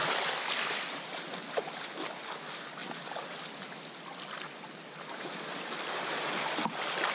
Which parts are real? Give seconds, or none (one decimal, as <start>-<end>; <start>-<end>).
0.0-7.1